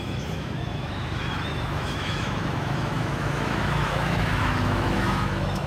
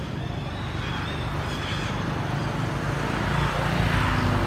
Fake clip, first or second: first